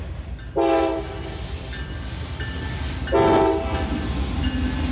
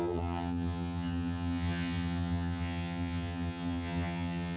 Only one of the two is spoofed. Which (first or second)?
second